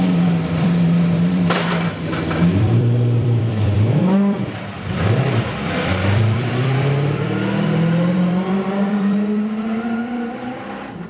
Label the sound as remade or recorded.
remade